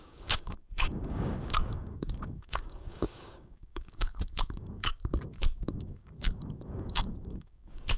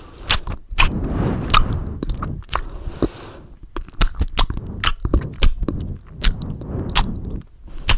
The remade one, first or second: first